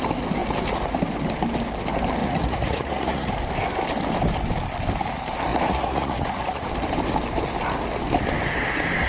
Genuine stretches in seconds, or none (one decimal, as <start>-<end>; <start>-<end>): 0.0-2.2; 3.3-5.5; 6.7-9.1